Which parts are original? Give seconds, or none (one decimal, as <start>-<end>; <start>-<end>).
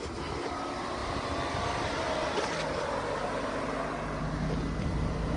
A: 0.0-5.4